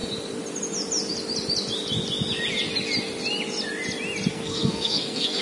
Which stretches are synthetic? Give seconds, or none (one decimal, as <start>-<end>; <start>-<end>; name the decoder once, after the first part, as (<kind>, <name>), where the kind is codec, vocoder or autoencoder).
4.3-5.4 (codec, SNAC)